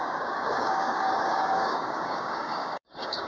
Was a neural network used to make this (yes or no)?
yes